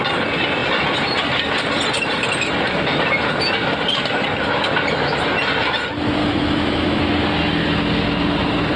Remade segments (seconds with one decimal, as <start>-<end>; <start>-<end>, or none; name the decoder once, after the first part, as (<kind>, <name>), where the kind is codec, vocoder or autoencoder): 6.2-7.0 (autoencoder, DAC-VAE)